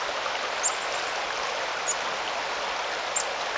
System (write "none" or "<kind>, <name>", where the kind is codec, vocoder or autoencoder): none